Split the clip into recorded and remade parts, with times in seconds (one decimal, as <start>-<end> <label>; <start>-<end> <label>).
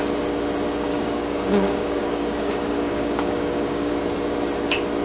0.0-0.9 recorded; 0.9-3.9 remade; 3.9-5.0 recorded